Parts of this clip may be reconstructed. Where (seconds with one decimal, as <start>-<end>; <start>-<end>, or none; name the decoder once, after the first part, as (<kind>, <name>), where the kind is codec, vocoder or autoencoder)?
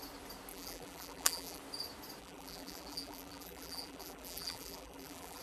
0.5-1.6 (vocoder, BigVGAN v2); 2.2-5.4